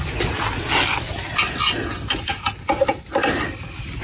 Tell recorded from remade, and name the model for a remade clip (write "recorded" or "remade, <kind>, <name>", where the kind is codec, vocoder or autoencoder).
recorded